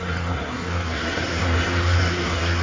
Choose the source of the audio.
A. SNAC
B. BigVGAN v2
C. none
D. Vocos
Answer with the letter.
A